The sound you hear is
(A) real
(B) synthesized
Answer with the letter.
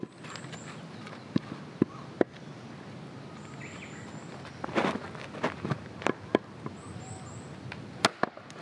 A